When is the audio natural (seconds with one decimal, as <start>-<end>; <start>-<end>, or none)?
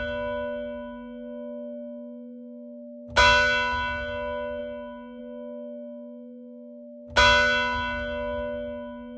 0.0-9.2